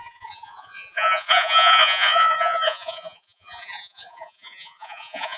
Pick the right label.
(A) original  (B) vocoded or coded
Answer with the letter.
B